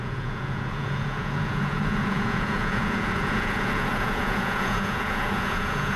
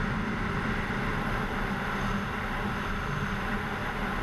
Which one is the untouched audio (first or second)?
second